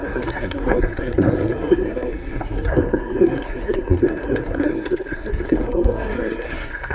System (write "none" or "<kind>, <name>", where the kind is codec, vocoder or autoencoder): codec, SNAC